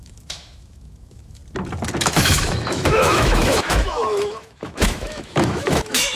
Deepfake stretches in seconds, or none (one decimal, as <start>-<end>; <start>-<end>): 0.0-1.4; 2.0-6.2